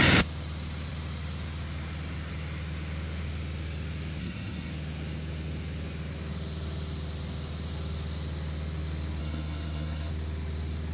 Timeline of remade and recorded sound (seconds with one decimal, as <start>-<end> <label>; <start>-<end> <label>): 0.0-4.2 recorded; 4.2-4.7 remade; 4.7-9.2 recorded; 9.2-10.1 remade; 10.1-10.9 recorded